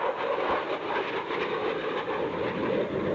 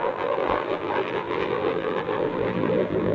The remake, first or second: second